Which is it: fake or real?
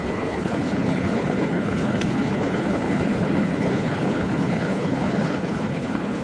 fake